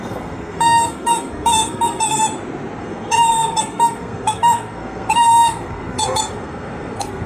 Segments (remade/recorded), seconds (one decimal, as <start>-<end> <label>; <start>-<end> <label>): 0.0-2.2 remade; 2.2-2.8 recorded; 2.8-7.3 remade